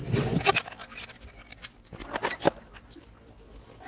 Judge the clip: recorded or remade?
recorded